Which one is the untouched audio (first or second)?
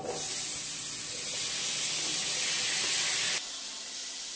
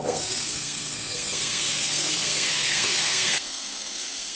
first